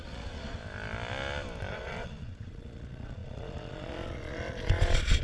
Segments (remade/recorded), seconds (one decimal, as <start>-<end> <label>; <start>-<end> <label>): 0.0-0.6 remade; 0.6-1.7 recorded; 1.7-5.2 remade